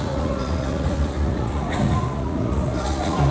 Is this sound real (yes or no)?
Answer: no